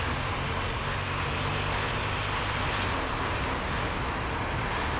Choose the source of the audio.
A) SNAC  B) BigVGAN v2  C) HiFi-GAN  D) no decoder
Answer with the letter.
D